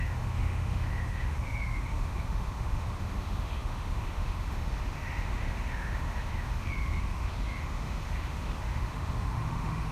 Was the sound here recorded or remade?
remade